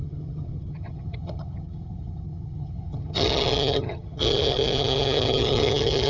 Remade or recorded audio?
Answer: remade